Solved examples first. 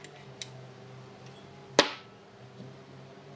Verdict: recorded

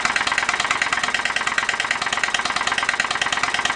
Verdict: recorded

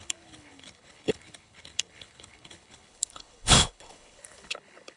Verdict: remade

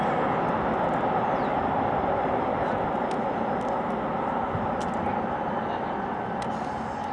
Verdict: recorded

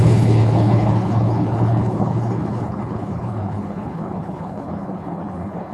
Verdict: remade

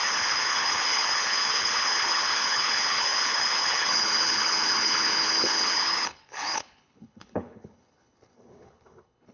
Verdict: remade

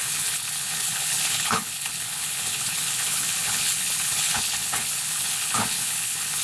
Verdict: remade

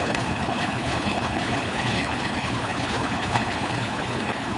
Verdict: remade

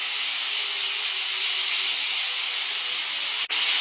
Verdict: recorded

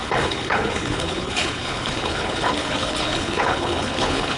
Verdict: remade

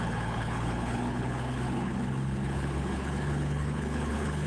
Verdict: remade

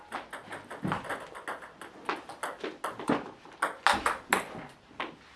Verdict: recorded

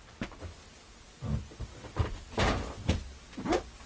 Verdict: recorded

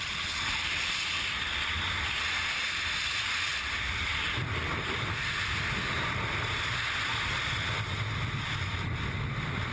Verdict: recorded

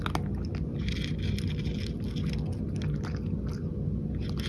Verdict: recorded